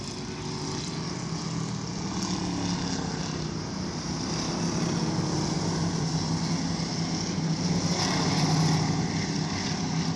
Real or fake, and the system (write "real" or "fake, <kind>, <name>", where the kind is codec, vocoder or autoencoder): real